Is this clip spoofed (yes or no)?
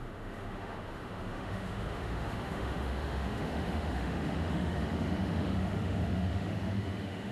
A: yes